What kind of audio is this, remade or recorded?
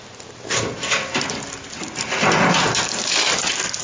recorded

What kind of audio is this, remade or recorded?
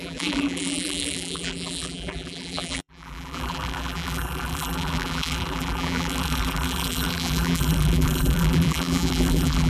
remade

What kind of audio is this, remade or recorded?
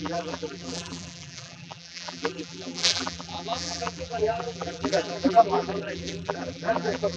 remade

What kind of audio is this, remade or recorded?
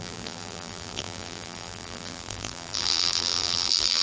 remade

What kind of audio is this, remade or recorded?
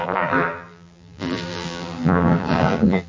remade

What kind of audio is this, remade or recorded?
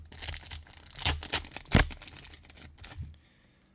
recorded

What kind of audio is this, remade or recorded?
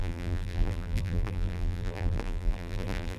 remade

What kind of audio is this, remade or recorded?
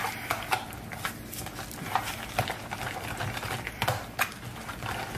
recorded